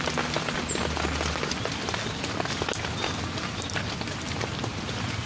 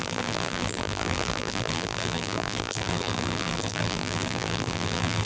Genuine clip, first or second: first